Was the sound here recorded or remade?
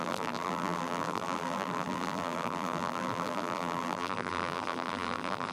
remade